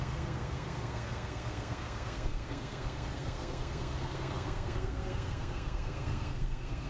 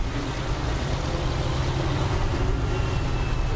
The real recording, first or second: second